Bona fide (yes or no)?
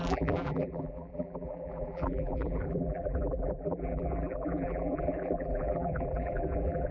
no